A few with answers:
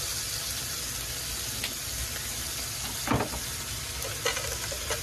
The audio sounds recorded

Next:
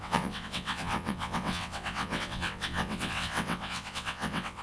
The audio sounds remade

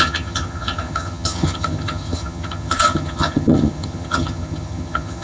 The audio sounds remade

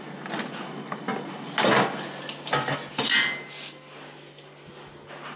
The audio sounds recorded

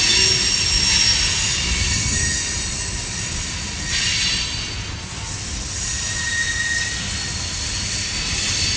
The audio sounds recorded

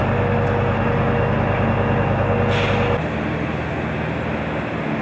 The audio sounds recorded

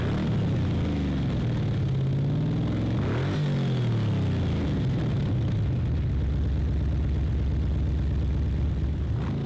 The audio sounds recorded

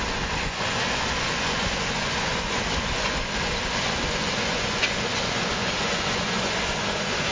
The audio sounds remade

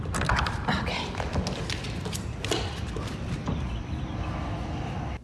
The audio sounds recorded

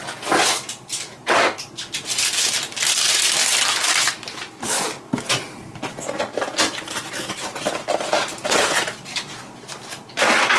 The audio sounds recorded